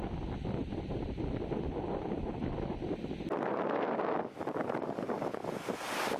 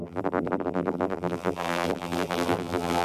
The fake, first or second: second